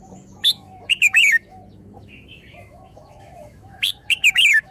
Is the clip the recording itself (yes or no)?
no